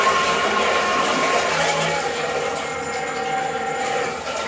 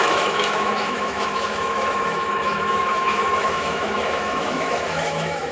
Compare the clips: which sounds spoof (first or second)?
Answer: second